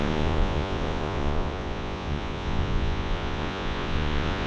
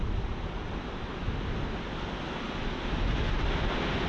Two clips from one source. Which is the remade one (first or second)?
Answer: first